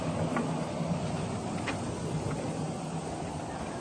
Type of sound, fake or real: real